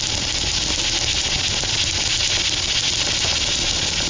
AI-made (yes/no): no